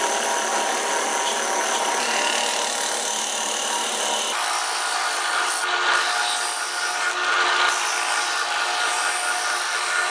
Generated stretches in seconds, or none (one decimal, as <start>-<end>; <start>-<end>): none